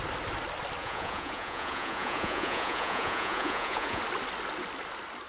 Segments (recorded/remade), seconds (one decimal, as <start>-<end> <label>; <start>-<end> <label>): 0.0-0.8 recorded; 0.8-4.0 remade; 4.0-5.3 recorded